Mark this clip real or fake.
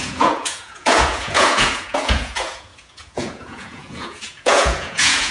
fake